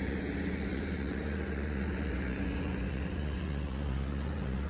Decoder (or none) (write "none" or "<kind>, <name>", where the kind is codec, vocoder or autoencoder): vocoder, Vocos